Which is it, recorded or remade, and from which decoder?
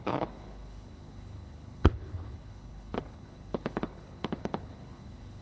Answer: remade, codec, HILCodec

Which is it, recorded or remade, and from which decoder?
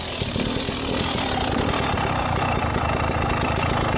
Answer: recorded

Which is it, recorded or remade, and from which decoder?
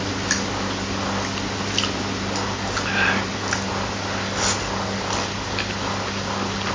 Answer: recorded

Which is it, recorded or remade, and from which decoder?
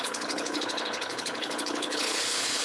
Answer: remade, codec, HILCodec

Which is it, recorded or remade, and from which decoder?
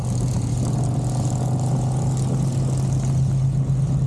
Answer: recorded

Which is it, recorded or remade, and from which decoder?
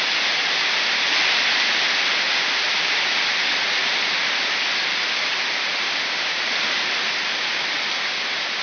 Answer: recorded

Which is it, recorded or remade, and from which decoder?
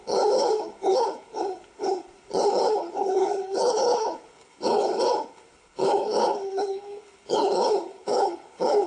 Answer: remade, codec, HILCodec